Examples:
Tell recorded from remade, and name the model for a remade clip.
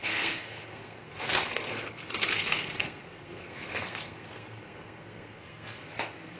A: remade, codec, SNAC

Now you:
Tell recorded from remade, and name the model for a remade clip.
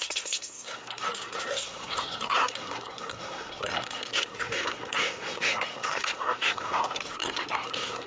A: remade, codec, SNAC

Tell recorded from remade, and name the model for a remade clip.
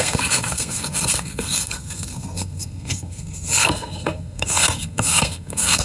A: remade, codec, SNAC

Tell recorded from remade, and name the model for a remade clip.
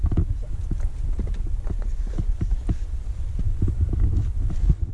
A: recorded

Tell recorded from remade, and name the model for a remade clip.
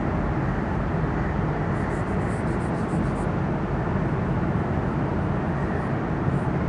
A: recorded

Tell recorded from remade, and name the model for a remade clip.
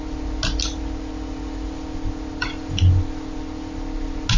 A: recorded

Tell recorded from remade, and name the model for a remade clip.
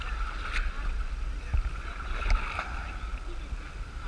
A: recorded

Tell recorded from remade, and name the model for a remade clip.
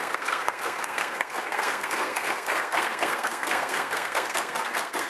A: remade, codec, SNAC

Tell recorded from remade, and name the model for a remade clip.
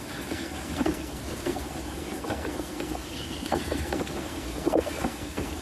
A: remade, codec, SNAC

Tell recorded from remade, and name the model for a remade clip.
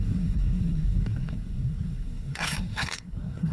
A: remade, codec, SNAC